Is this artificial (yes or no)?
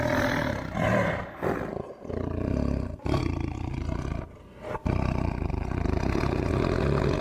no